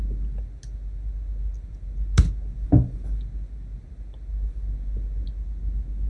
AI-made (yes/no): no